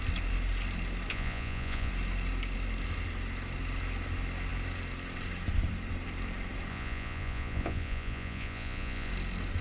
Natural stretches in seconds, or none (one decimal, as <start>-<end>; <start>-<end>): 0.0-1.1; 1.9-6.7; 9.1-9.6